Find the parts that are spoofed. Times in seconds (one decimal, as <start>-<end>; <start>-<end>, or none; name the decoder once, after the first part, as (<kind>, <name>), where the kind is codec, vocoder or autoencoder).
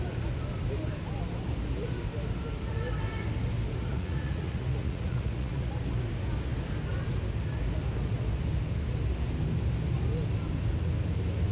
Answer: 3.9-5.8 (vocoder, Vocos)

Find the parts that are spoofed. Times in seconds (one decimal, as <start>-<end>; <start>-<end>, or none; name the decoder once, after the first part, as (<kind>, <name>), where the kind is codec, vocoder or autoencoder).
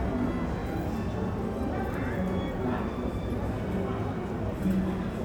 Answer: none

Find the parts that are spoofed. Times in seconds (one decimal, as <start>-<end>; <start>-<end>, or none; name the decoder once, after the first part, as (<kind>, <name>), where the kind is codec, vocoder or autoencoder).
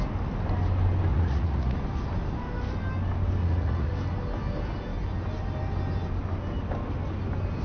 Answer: 1.1-1.8 (vocoder, Vocos); 3.4-3.9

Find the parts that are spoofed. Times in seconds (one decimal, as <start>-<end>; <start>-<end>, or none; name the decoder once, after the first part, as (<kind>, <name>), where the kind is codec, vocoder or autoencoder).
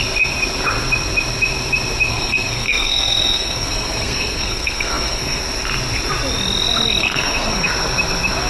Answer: 2.1-5.4 (codec, SNAC); 7.0-7.7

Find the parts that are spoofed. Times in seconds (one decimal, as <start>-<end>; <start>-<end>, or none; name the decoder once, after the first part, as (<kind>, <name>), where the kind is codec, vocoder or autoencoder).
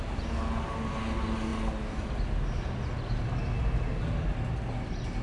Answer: none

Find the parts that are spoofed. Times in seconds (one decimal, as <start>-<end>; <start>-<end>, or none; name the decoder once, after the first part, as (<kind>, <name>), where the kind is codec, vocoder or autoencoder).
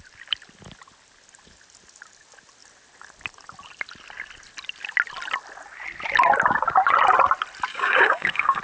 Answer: 7.7-8.6 (codec, DAC)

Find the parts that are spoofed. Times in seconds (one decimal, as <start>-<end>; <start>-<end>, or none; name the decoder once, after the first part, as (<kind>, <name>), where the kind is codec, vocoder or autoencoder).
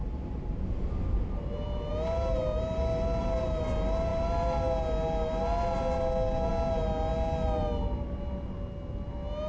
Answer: none